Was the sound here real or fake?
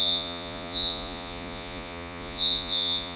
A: fake